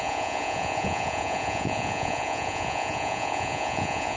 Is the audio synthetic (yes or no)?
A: yes